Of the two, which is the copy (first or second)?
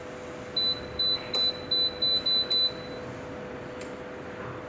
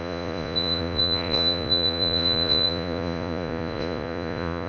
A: second